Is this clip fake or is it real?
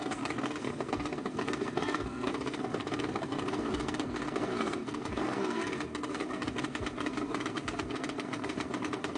fake